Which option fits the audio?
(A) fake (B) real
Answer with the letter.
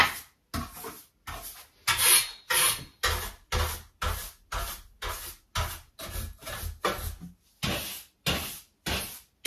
B